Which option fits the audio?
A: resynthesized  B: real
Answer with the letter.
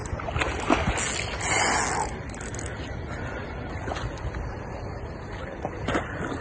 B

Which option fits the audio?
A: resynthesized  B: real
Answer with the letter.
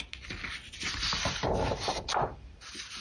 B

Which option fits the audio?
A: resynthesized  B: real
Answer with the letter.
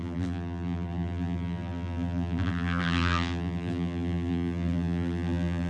A